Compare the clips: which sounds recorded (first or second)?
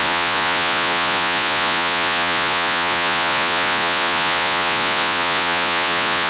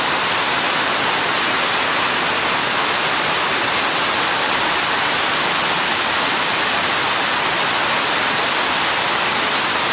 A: second